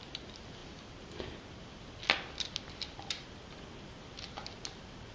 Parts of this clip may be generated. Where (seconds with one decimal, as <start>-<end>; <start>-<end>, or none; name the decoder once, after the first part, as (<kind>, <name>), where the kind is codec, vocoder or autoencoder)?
none